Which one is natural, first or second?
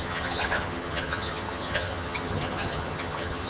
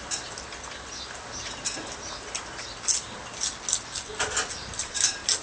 second